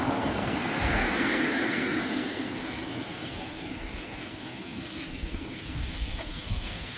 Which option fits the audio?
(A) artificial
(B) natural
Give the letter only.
A